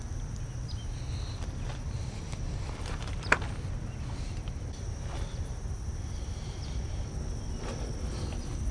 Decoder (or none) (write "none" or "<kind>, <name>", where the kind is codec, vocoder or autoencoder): none